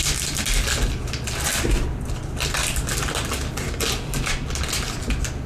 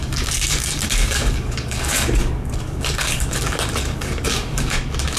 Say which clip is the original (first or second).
first